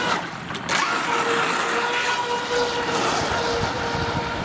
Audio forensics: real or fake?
real